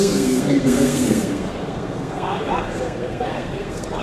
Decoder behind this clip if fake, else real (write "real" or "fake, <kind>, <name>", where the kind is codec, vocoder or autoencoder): fake, codec, SNAC